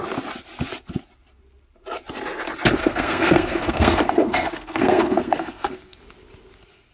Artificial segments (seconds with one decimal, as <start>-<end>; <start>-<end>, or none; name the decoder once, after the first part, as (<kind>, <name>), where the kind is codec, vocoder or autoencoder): 2.8-6.0 (codec, SNAC)